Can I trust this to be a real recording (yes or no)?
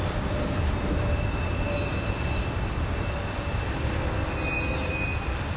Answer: yes